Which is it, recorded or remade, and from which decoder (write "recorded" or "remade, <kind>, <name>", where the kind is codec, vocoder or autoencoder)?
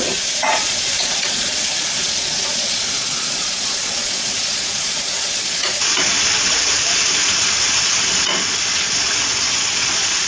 remade, vocoder, Vocos